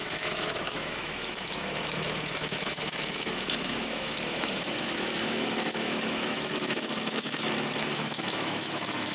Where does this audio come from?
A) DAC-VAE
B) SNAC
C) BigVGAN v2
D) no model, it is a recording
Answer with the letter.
A